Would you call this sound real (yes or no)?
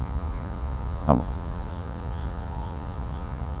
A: no